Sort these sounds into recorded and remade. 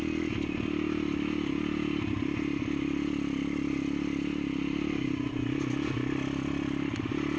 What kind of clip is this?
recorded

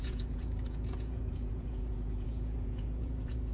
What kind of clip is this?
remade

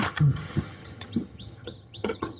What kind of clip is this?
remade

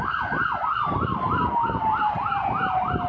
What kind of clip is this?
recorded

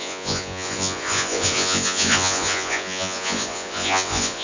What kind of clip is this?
remade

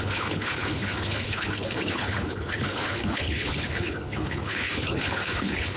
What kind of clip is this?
remade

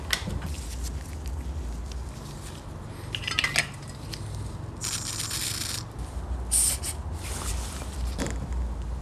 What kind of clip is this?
recorded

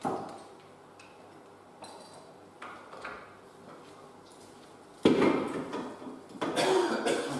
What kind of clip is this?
recorded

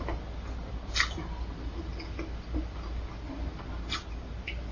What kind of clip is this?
recorded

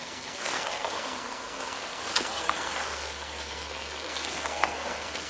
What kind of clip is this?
remade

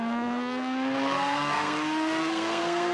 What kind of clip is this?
remade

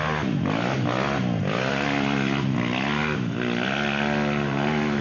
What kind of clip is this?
recorded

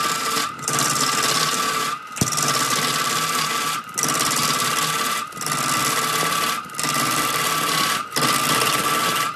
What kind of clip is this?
recorded